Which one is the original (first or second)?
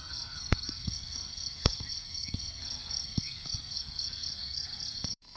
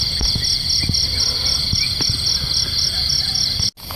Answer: second